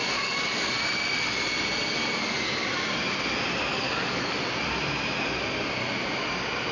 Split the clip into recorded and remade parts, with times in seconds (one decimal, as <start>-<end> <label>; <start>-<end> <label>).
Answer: 0.0-0.7 remade; 0.7-3.7 recorded; 3.7-4.4 remade; 4.4-6.7 recorded